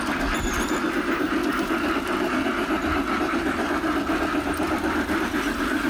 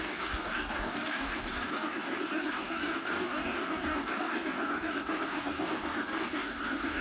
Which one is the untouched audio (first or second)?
first